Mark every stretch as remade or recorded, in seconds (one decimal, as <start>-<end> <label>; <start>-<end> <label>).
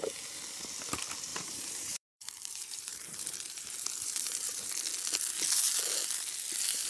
0.0-1.3 recorded; 1.3-4.7 remade; 4.7-6.9 recorded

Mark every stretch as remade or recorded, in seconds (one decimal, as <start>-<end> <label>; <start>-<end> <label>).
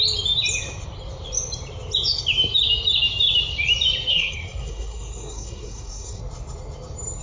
0.0-4.1 recorded; 4.1-6.2 remade; 6.2-7.2 recorded